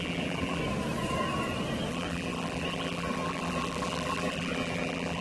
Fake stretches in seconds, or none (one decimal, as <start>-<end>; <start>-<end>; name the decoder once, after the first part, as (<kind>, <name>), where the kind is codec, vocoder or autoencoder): 0.0-0.6 (vocoder, BigVGAN v2); 1.9-5.2